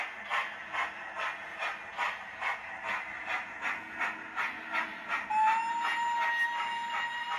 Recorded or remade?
recorded